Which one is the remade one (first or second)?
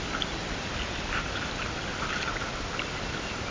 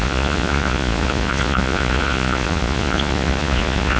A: second